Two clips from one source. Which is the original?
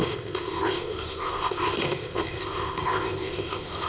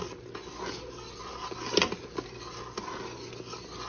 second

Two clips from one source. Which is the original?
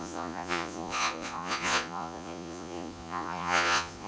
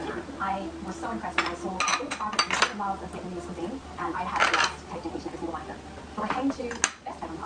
second